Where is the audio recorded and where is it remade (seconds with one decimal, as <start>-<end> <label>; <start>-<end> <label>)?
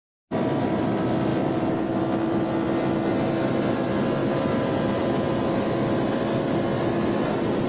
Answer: 0.0-7.7 recorded